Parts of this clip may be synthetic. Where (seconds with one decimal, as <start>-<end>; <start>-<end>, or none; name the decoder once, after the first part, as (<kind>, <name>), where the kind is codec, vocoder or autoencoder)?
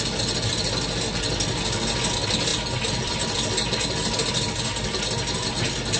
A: none